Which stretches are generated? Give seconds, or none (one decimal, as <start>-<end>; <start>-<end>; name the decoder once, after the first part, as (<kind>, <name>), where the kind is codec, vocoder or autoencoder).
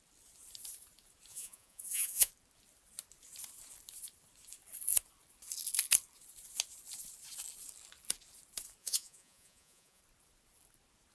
1.3-2.3 (vocoder, Vocos); 8.8-10.0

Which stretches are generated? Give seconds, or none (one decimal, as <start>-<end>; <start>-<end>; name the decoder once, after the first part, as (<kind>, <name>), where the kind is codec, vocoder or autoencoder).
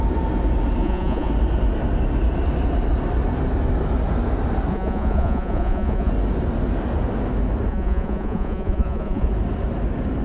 0.8-1.3 (vocoder, Vocos); 4.7-6.1; 7.7-9.3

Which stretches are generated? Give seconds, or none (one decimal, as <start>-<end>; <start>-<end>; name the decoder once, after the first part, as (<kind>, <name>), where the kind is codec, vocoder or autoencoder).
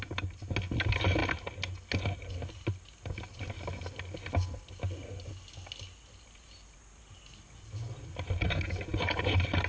none